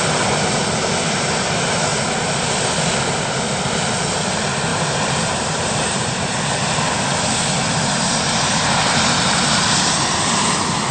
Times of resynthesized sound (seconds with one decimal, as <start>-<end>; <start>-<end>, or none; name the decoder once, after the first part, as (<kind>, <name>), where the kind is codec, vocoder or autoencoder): 4.7-6.1 (vocoder, BigVGAN v2)

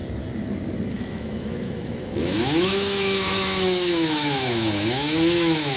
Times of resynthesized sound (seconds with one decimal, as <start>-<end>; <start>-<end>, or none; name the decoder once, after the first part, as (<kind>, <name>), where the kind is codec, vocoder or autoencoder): 0.9-5.8 (autoencoder, DAC-VAE)

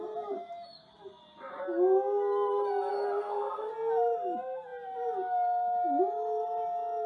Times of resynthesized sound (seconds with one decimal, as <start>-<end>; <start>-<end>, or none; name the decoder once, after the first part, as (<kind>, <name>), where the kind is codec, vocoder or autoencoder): 2.9-3.7 (codec, SNAC)

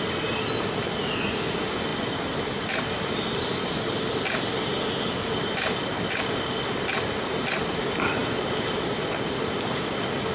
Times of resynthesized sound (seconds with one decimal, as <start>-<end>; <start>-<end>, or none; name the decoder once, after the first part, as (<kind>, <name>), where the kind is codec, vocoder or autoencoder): none

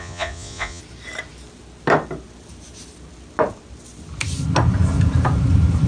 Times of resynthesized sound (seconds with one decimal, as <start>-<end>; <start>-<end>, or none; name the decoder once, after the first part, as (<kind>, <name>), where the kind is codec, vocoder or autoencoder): 0.0-0.8 (vocoder, Vocos)

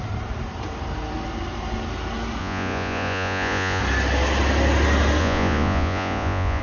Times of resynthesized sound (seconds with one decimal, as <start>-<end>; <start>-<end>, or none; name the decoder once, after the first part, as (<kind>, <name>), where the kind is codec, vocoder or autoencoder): 2.4-3.8 (vocoder, Vocos); 5.2-6.6

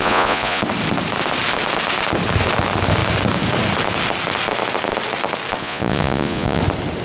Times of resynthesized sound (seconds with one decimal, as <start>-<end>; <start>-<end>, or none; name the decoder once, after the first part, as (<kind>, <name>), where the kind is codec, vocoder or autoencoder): 0.0-0.6 (vocoder, Vocos); 5.6-6.6

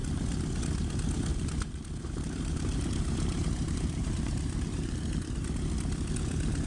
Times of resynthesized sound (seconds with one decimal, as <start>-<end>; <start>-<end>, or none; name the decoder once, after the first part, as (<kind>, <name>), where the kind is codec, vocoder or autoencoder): 1.3-5.3 (vocoder, BigVGAN v2)